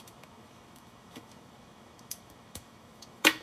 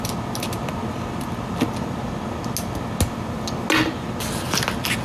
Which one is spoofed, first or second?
first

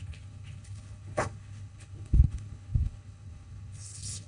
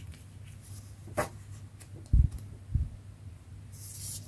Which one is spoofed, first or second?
first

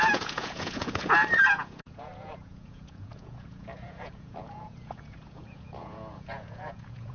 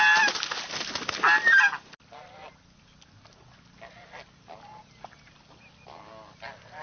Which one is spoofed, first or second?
first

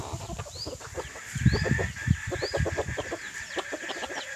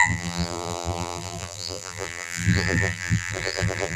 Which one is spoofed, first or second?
second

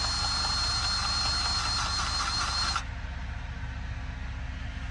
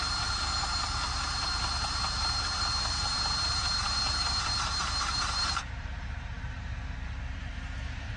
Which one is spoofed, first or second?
second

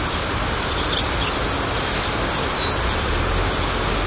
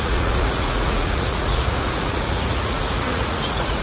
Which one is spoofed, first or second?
second